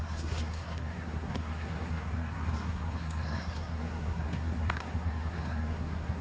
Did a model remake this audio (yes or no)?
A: yes